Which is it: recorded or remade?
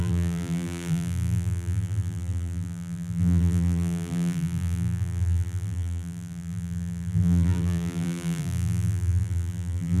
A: remade